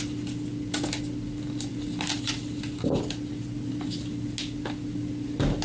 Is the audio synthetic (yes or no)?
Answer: no